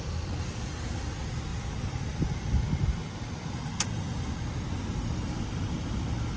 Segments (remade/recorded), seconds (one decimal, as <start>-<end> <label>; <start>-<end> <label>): 0.0-6.4 recorded